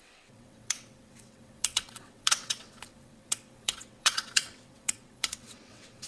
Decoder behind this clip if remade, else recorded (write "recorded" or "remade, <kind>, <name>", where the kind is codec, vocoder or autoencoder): remade, vocoder, WaveNeXt